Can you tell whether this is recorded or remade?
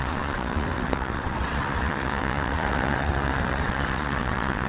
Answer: remade